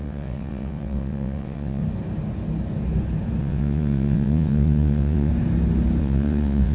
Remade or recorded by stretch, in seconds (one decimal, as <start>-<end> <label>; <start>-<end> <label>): 0.0-1.8 remade; 1.8-3.4 recorded; 3.4-5.3 remade; 5.3-6.0 recorded; 6.0-6.7 remade